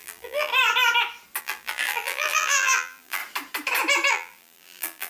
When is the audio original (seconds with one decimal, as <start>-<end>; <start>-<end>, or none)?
0.5-1.4; 3.2-4.1